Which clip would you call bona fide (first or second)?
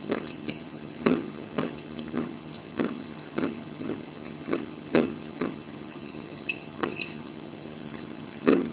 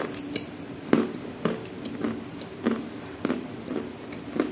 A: second